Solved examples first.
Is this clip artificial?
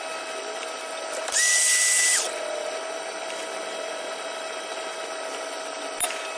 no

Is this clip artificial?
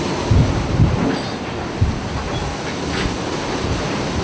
no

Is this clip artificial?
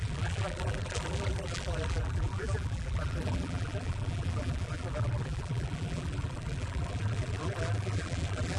yes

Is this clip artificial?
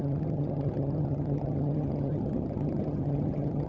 yes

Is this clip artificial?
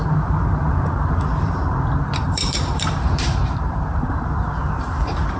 yes